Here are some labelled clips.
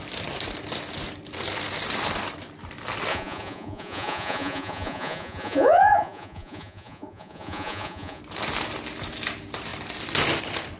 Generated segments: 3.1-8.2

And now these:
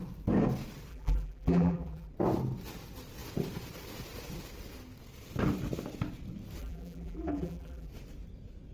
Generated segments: 0.9-2.1; 6.6-7.9

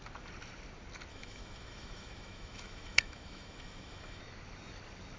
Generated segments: 1.1-4.2

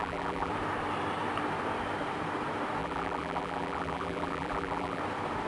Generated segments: 0.0-0.5; 2.8-5.0

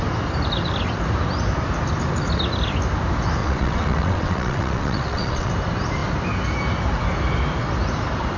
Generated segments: 3.4-5.5

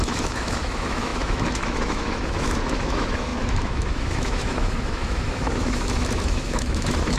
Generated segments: 0.0-7.2

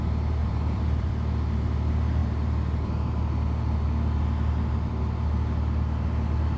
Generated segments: 0.4-1.1

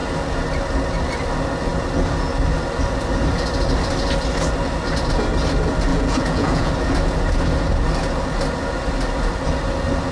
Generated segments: 5.9-6.7